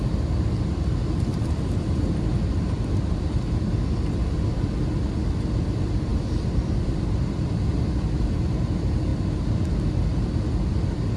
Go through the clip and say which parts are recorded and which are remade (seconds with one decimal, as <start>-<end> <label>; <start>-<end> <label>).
0.0-1.3 recorded; 1.3-3.2 remade; 3.2-6.1 recorded; 6.1-7.1 remade; 7.1-11.2 recorded